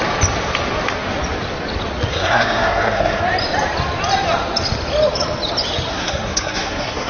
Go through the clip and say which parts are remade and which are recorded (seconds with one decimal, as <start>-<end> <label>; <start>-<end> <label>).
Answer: 0.0-2.1 recorded; 2.1-3.2 remade; 3.2-5.9 recorded; 5.9-7.1 remade